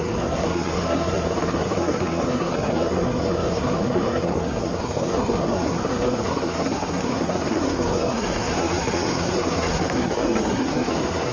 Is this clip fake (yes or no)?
yes